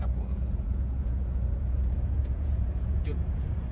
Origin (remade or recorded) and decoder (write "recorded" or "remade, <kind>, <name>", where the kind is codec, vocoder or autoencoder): remade, vocoder, Vocos